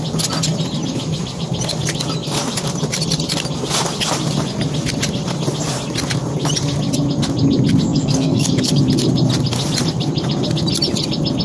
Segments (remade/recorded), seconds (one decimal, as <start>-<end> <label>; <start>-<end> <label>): 0.0-7.9 recorded; 7.9-8.8 remade; 8.8-11.4 recorded